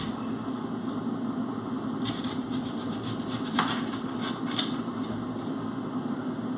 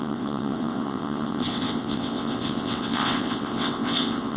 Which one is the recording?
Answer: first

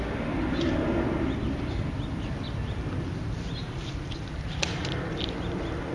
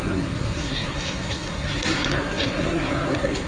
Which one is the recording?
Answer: first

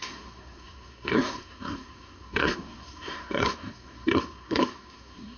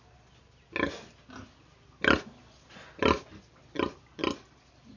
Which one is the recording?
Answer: second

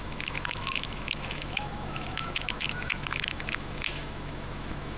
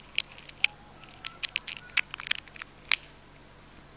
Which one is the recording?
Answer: second